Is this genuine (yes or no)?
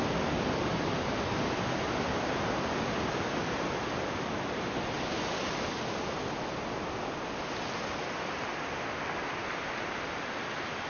yes